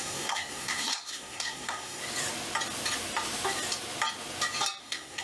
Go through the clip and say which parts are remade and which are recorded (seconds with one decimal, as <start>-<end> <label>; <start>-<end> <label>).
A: 0.0-2.0 remade; 2.0-4.8 recorded; 4.8-5.2 remade